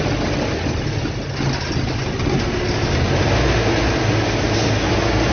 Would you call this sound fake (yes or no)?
no